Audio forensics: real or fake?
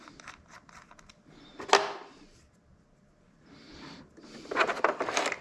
real